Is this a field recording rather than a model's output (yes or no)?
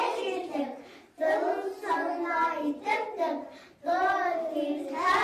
yes